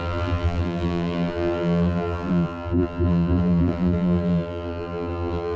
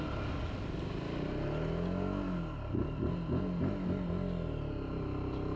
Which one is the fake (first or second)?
first